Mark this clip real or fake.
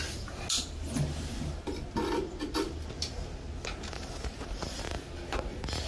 real